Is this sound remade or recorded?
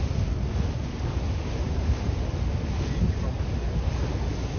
recorded